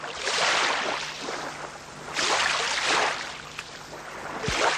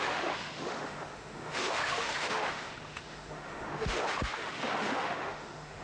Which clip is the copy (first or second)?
second